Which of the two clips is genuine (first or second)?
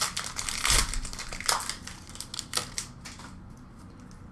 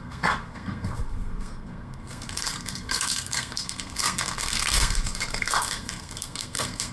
first